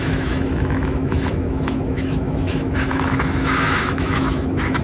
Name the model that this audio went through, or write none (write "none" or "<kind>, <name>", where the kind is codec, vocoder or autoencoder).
autoencoder, DAC-VAE